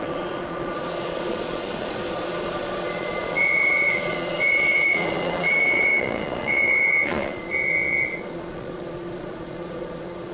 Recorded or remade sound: remade